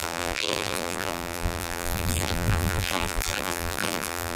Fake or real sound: fake